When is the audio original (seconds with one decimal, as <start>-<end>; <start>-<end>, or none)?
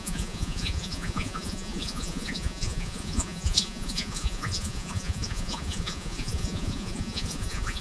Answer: none